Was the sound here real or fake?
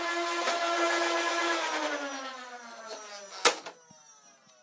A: real